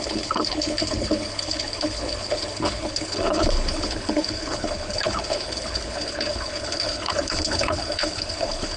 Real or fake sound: fake